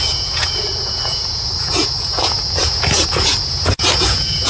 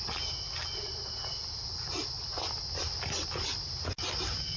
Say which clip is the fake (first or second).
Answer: first